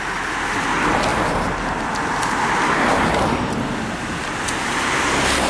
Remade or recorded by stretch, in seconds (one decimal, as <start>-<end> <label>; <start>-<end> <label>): 0.0-5.5 recorded